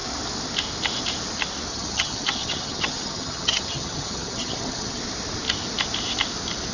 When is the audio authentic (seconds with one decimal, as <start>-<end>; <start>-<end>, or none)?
0.0-1.7; 5.0-6.7